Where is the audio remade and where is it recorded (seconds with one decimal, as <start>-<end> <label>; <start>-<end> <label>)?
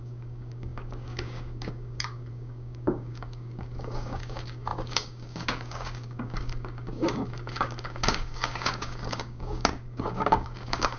0.0-11.0 remade